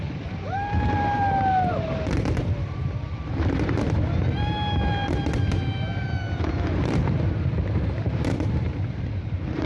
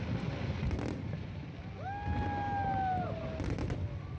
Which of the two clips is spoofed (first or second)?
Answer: first